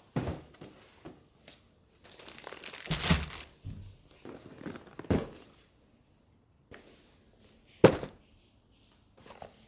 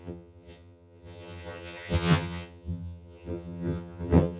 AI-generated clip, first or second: second